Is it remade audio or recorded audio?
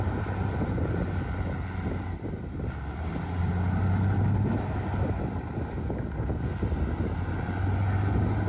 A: recorded